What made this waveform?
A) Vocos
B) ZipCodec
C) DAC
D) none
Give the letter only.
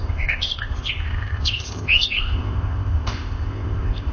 B